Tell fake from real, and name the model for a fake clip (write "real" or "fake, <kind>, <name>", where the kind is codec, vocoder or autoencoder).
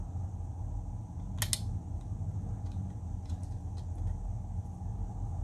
real